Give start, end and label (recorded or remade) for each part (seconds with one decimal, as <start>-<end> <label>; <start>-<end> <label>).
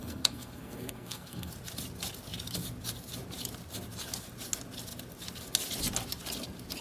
0.0-1.5 remade; 1.5-6.8 recorded